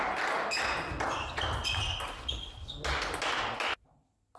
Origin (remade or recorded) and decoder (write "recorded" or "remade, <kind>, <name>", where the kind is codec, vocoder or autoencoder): recorded